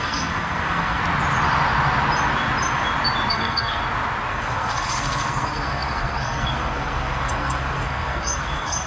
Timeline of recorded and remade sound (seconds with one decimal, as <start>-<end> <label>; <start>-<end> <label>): 0.0-1.0 remade; 1.0-3.3 recorded; 3.3-3.8 remade; 3.8-4.3 recorded; 4.3-8.9 remade